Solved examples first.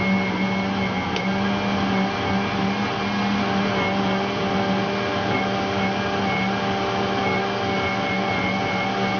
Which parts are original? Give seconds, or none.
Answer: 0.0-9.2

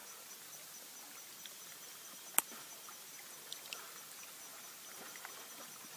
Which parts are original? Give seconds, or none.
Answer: 0.0-6.0

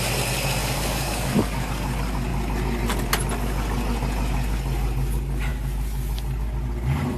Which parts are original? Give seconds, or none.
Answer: 0.0-0.6; 1.7-7.2

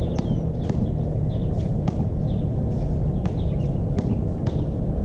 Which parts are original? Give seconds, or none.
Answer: 0.0-5.0

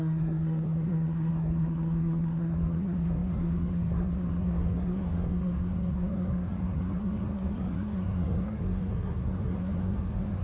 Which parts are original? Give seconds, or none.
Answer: none